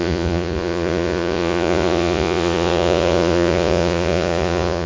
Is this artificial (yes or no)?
yes